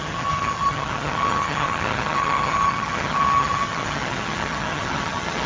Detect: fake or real fake